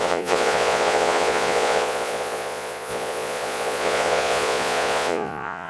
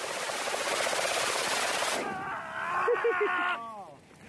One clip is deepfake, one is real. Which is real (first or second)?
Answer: second